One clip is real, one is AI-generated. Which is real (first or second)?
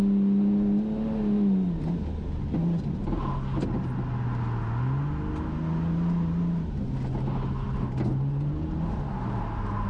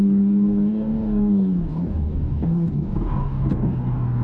first